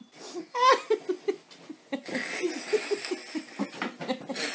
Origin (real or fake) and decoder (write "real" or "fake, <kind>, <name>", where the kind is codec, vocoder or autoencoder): real